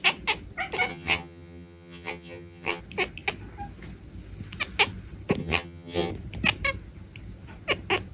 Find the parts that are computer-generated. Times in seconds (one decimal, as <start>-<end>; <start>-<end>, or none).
0.9-2.8; 5.4-6.1

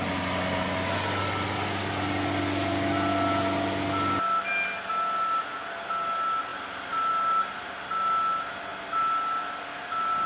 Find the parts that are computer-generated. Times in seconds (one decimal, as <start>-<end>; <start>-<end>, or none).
none

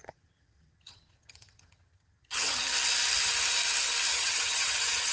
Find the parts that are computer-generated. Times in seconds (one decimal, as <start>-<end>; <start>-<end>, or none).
0.0-2.6; 4.1-5.1

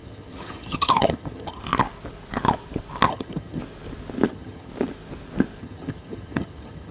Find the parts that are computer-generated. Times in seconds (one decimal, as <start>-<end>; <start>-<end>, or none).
0.0-1.6; 3.1-3.6; 4.3-4.7; 5.6-6.9

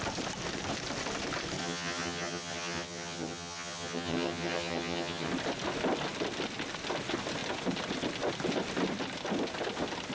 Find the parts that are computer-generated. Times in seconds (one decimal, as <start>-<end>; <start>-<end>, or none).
1.6-5.3

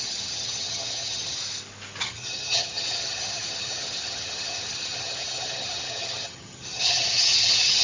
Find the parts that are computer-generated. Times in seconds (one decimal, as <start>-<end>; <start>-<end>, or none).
0.0-1.4; 2.0-7.8

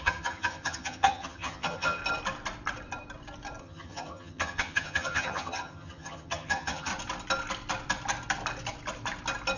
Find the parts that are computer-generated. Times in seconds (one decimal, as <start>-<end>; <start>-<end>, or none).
0.0-2.0; 3.6-6.9

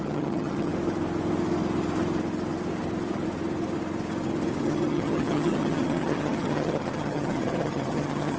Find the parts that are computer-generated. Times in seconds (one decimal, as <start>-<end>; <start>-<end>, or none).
0.0-0.7; 4.6-8.4